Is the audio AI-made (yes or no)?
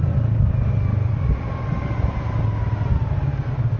no